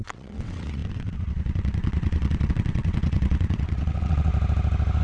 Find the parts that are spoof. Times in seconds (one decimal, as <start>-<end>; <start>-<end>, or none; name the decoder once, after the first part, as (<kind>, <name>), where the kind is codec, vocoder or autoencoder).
0.0-4.3 (vocoder, WaveNeXt)